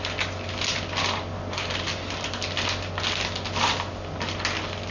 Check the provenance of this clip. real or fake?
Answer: real